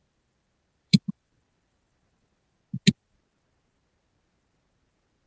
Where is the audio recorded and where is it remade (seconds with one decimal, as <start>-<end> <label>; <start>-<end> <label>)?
0.0-2.6 remade; 2.6-5.3 recorded